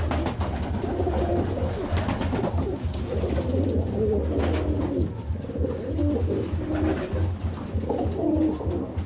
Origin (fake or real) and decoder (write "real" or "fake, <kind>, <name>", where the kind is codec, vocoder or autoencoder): real